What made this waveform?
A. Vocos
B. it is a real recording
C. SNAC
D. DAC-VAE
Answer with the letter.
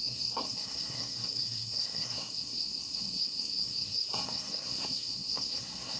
C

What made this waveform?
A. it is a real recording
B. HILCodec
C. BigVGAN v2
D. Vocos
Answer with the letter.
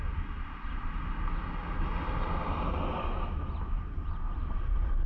A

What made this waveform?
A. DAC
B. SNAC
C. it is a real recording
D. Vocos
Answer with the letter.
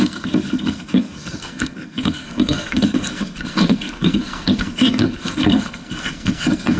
B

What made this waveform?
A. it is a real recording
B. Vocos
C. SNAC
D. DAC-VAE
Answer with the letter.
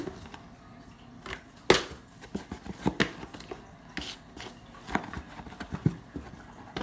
A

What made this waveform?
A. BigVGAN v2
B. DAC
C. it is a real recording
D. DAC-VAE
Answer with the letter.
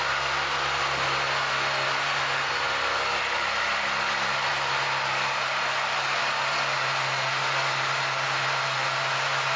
C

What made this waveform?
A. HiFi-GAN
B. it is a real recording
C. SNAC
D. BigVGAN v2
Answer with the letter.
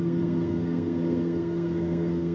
C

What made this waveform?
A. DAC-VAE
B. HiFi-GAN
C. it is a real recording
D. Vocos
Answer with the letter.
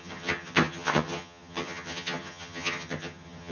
B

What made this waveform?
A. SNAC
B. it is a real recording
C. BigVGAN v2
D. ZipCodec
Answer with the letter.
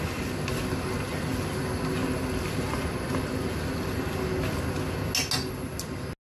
B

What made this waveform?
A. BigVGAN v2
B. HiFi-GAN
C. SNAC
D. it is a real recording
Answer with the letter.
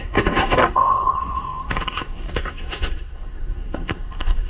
C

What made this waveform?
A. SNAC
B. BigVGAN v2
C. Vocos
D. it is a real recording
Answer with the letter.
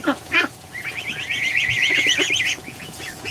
C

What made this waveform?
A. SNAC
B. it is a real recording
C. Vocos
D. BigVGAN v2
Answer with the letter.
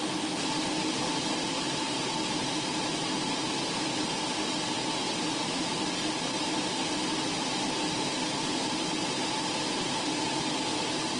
B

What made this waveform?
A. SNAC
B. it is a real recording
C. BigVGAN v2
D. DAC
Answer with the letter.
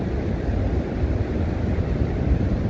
B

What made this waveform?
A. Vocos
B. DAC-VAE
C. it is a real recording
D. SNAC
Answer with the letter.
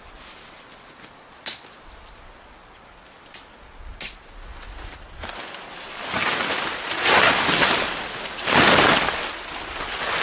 C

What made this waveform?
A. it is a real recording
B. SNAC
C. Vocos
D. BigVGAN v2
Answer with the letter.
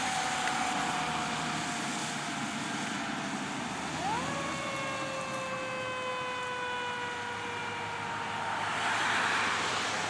A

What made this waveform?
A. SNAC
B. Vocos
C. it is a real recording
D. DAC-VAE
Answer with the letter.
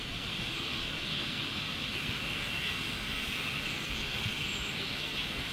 A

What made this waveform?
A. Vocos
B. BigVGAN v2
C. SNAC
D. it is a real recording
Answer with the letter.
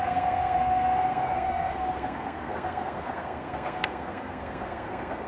C